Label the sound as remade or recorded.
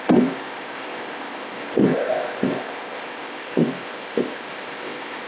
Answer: remade